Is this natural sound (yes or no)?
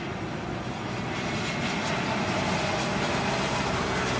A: yes